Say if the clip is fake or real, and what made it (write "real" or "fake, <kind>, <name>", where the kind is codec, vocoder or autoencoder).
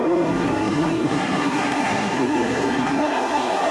fake, codec, SNAC